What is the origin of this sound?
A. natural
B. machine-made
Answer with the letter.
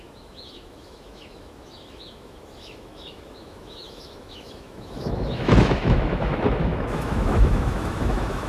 B